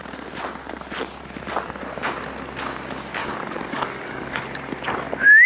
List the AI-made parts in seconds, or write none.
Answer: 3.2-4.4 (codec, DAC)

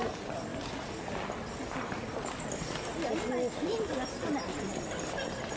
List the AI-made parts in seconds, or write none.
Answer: none

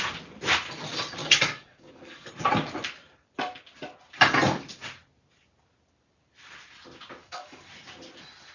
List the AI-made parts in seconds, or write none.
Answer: 1.2-2.3 (codec, DAC); 7.2-7.7

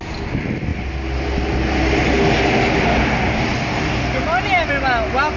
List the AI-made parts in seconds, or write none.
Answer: none

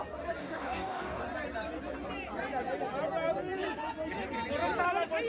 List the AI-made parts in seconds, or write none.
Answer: 0.4-1.2 (codec, DAC)

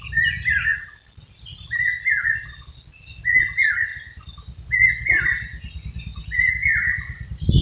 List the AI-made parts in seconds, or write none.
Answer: none